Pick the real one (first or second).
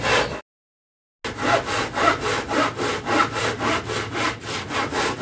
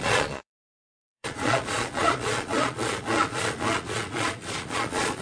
first